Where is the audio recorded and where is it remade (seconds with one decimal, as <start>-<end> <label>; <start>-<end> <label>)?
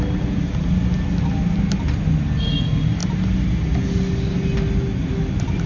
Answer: 0.0-5.7 recorded